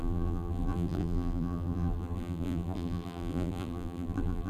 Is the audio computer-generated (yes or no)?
yes